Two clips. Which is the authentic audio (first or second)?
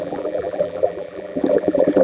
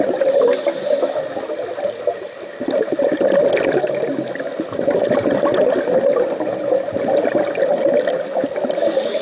second